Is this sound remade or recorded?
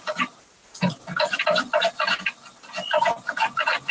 recorded